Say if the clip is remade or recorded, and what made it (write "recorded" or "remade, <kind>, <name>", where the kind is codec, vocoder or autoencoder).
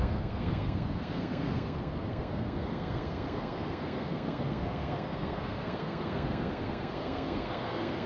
remade, codec, SNAC